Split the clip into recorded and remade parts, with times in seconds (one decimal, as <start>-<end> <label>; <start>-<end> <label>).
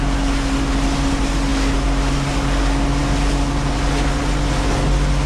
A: 0.0-5.3 recorded